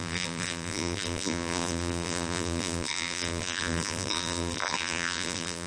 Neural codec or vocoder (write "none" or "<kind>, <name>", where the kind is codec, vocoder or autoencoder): vocoder, BigVGAN v2